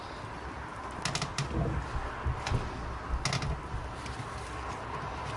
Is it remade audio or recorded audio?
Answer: recorded